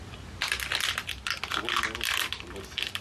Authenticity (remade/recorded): recorded